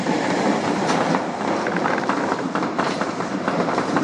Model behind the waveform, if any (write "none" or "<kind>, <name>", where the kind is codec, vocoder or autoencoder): vocoder, BigVGAN v2